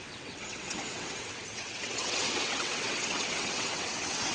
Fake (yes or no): yes